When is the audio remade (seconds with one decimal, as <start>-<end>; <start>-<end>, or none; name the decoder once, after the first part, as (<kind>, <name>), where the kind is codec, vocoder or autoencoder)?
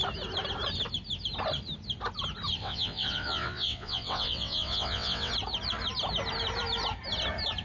2.6-5.3 (vocoder, WaveNeXt)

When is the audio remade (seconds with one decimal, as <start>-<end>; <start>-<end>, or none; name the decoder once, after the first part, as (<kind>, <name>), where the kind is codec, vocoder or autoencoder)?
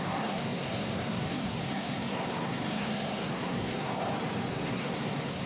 0.0-3.9 (codec, SNAC); 4.5-5.5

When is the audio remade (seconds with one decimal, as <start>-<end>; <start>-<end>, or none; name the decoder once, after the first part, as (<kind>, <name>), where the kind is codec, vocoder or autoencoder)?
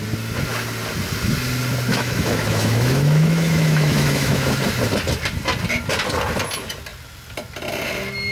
1.9-4.6 (autoencoder, DAC-VAE)